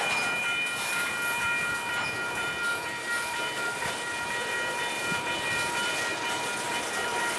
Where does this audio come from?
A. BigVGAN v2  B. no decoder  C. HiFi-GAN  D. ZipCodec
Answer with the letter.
A